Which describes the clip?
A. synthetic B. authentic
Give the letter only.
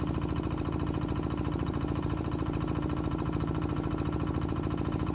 A